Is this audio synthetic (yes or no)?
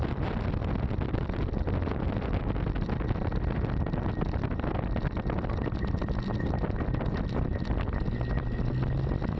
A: no